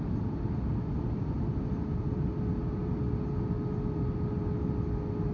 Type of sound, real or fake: real